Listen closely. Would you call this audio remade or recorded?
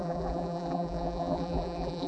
remade